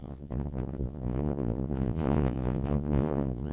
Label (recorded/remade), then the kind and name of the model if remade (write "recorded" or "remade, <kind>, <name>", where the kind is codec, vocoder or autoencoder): remade, vocoder, Vocos